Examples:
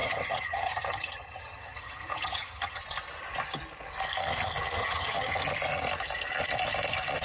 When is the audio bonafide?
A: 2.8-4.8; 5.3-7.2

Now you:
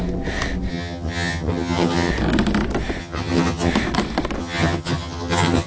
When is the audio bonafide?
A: 0.0-0.7; 2.1-3.0; 3.7-4.4

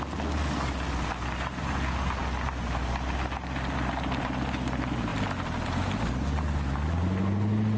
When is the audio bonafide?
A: 0.0-7.8

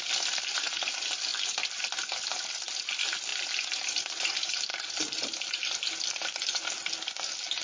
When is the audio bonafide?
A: 0.0-7.6

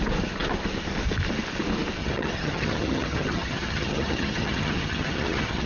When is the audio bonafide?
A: 0.0-2.0

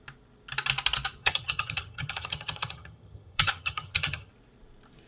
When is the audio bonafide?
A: 0.0-1.2; 4.3-5.1